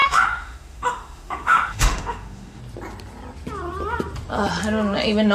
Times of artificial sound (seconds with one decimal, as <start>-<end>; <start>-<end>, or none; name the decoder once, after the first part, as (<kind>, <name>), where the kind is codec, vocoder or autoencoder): 0.0-2.6 (autoencoder, DAC-VAE)